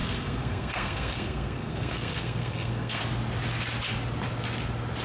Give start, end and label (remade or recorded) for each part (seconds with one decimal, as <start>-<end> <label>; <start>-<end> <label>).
0.0-3.0 remade; 3.0-5.0 recorded